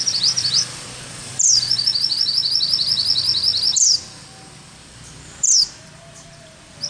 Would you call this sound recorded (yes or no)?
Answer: no